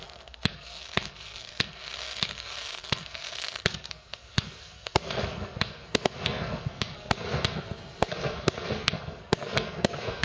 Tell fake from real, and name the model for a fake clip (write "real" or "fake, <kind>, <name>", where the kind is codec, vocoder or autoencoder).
fake, codec, SNAC